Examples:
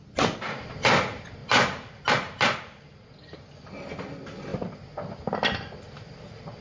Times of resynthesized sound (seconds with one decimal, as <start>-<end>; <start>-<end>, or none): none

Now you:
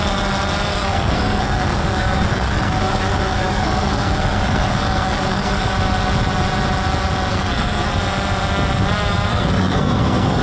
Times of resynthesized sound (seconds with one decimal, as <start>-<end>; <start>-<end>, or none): 0.7-5.7; 7.3-7.9; 9.3-10.4

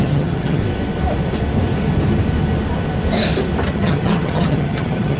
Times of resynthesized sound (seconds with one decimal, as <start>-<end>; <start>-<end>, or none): 0.0-0.6; 3.7-5.2

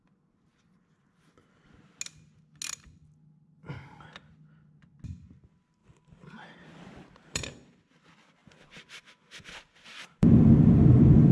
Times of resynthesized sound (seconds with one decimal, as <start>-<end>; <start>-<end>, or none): 5.8-7.4; 8.4-11.3

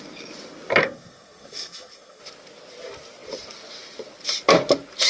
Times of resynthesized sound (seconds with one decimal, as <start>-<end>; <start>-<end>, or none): 0.8-2.2

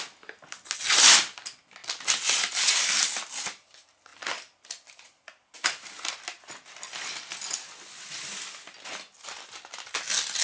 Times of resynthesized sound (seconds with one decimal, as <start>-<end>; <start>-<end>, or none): none